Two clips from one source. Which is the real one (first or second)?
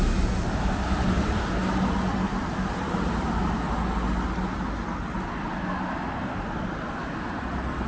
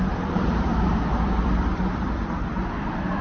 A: first